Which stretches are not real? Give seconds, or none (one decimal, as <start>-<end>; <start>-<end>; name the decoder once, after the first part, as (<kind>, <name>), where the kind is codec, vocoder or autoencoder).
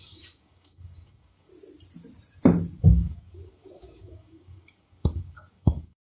0.0-1.5 (codec, DAC); 2.8-6.0